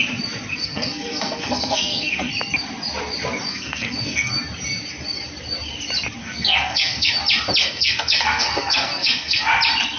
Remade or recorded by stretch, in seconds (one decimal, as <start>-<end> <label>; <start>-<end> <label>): 0.0-0.5 recorded; 0.5-2.3 remade; 2.3-3.5 recorded; 3.5-4.3 remade; 4.3-6.2 recorded; 6.2-7.1 remade; 7.1-7.6 recorded; 7.6-9.4 remade; 9.4-10.0 recorded